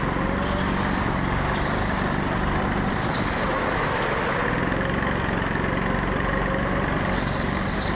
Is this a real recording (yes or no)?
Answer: yes